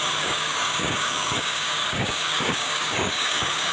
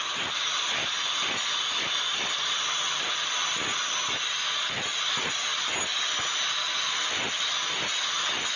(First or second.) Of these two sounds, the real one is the second